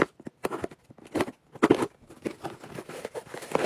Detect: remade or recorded recorded